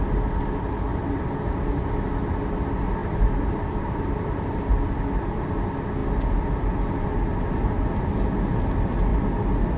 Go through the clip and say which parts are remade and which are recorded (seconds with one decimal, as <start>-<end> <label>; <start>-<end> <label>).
0.0-3.0 recorded; 3.0-4.7 remade; 4.7-9.8 recorded